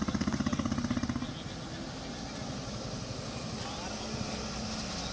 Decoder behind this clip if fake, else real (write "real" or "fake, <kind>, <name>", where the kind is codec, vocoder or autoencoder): real